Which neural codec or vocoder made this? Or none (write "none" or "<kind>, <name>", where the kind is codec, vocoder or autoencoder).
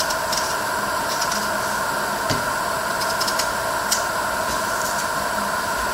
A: none